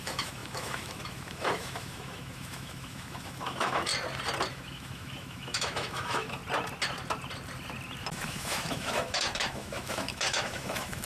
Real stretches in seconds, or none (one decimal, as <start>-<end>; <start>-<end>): 3.9-4.5; 6.4-8.1